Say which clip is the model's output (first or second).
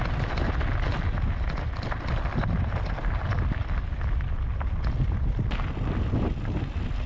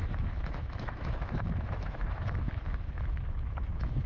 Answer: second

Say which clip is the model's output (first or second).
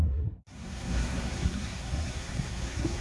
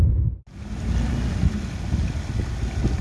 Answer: first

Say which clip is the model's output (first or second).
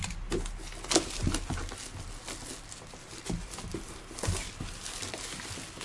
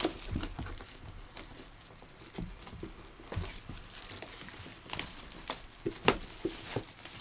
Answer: second